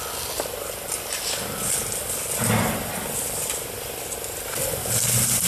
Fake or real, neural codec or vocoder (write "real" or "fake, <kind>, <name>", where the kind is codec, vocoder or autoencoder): real